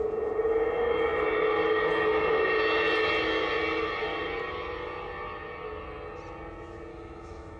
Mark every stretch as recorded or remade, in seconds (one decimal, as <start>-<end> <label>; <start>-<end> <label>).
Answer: 0.0-6.9 recorded; 6.9-7.6 remade